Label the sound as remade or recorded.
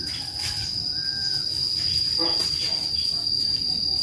recorded